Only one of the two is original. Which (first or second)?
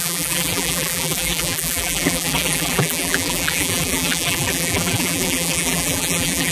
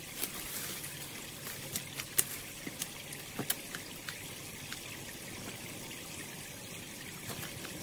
second